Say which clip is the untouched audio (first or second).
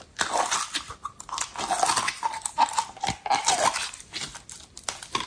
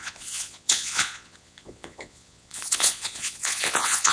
first